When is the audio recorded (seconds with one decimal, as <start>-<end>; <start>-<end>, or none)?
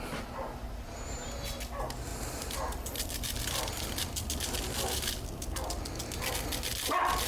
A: 0.0-2.1; 4.6-7.3